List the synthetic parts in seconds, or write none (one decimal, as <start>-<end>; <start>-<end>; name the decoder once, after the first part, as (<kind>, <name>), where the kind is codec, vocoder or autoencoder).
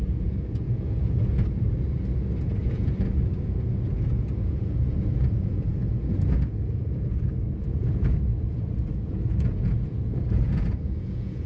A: 0.0-1.3 (vocoder, Vocos); 2.4-11.5